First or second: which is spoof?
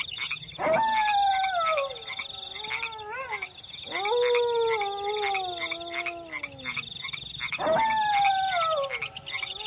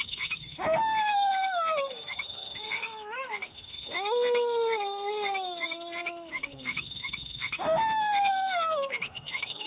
second